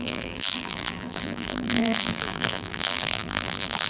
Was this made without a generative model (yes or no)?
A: no